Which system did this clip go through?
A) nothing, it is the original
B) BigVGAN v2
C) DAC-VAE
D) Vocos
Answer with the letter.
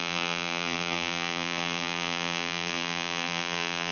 B